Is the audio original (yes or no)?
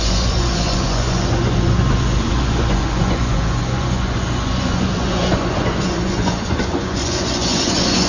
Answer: no